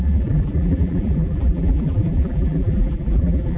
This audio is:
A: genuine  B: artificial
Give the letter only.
B